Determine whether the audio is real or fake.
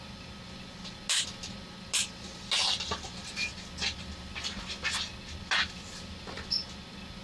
real